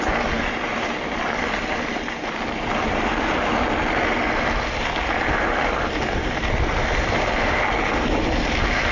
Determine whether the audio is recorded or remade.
recorded